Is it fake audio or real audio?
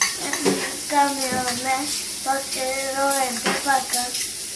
real